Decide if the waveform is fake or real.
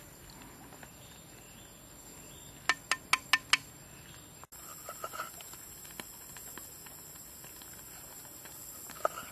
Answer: real